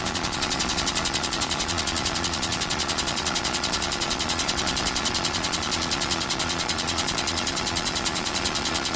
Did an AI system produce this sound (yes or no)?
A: yes